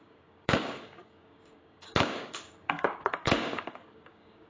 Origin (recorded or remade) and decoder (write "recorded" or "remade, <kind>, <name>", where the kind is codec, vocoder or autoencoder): remade, codec, DAC